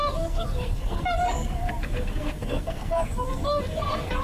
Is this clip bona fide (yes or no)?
no